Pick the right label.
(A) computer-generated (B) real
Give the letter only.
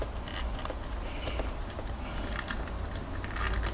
B